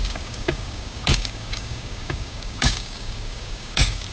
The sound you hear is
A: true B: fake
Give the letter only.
B